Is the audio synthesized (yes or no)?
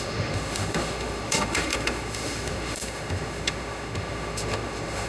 yes